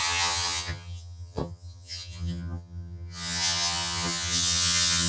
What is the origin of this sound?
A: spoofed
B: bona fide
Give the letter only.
A